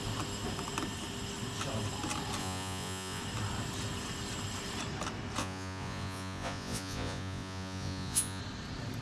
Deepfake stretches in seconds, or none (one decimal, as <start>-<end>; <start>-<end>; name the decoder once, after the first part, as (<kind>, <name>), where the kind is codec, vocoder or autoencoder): 2.4-3.2 (vocoder, Vocos); 5.4-8.4